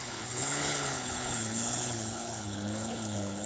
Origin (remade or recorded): remade